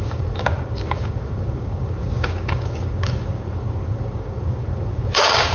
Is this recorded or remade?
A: remade